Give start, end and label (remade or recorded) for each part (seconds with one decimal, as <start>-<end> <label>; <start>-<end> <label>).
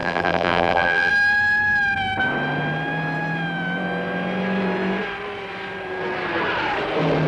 0.0-1.1 remade; 1.1-7.3 recorded